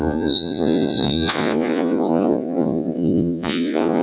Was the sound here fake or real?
fake